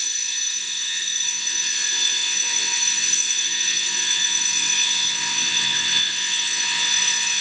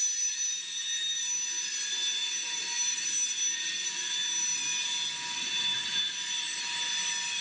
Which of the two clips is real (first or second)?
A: second